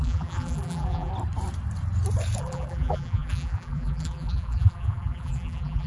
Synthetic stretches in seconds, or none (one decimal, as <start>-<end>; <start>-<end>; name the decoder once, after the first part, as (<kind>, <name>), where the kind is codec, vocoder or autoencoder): 0.0-1.1 (vocoder, BigVGAN v2); 2.4-5.9